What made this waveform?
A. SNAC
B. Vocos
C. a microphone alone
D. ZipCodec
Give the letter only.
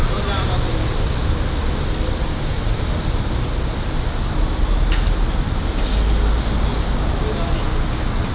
C